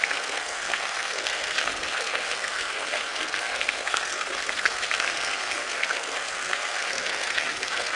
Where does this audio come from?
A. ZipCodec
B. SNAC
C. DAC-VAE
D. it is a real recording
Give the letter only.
B